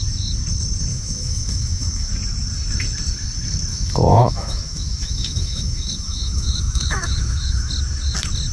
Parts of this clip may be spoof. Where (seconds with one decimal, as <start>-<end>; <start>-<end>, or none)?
0.9-2.1; 3.7-7.7